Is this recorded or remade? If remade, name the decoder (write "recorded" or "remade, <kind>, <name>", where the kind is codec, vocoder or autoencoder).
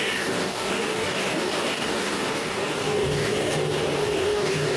remade, codec, DAC